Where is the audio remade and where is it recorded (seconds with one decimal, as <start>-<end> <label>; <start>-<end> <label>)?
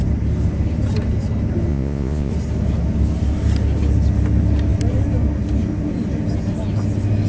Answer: 0.0-1.7 recorded; 1.7-2.3 remade; 2.3-7.3 recorded